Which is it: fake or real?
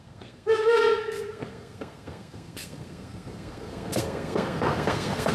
fake